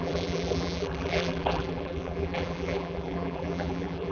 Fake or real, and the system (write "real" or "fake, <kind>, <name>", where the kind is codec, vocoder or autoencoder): fake, vocoder, BigVGAN v2